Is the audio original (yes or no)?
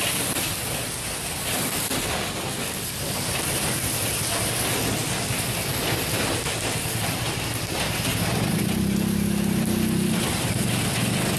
yes